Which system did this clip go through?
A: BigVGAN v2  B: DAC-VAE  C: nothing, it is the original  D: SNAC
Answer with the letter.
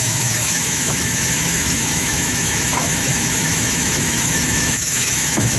B